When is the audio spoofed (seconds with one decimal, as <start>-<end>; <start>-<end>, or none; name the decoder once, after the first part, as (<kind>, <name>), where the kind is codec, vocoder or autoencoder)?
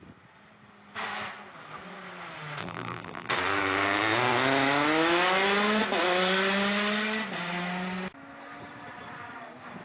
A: 2.6-3.3 (vocoder, BigVGAN v2)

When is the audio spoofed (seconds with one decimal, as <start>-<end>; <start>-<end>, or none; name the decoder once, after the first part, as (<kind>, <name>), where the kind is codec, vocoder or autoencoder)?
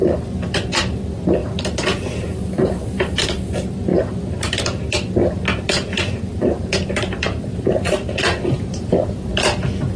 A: 1.4-3.2 (vocoder, BigVGAN v2); 3.9-4.6; 5.2-9.4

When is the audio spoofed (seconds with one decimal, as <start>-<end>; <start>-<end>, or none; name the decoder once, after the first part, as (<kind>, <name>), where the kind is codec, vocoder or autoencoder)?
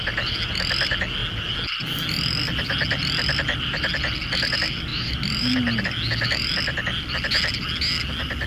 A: 4.9-5.8 (vocoder, BigVGAN v2)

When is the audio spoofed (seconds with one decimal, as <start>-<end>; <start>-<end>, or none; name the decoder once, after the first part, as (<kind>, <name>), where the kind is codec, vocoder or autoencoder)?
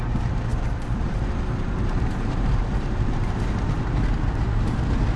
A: 0.5-3.6 (vocoder, BigVGAN v2)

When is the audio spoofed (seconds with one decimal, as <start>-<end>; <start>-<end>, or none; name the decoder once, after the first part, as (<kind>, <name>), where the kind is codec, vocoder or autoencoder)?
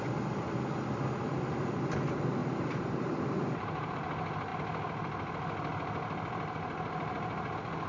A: 2.4-3.9 (vocoder, BigVGAN v2)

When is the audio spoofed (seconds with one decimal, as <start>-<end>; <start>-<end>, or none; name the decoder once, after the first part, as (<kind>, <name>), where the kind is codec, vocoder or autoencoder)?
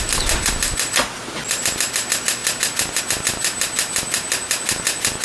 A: none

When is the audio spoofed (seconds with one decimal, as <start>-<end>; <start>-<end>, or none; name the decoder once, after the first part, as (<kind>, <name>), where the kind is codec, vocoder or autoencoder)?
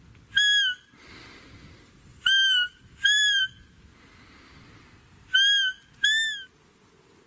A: 2.1-3.4 (vocoder, BigVGAN v2)